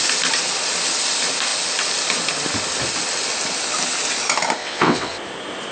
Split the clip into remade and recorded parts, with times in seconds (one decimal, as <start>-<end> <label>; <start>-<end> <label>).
0.0-4.6 recorded; 4.6-5.2 remade; 5.2-5.7 recorded